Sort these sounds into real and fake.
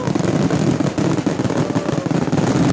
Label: fake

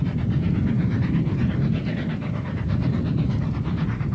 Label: fake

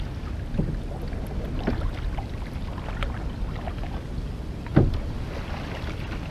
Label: real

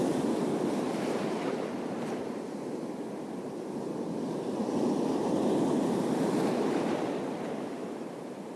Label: real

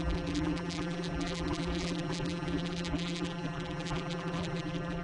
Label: fake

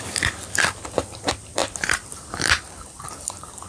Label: fake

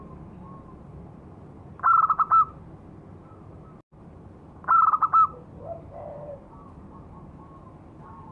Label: real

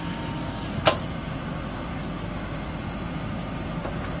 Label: real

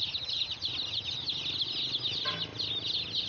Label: real